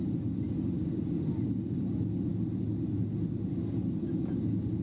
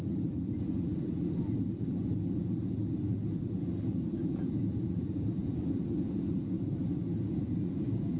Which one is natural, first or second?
first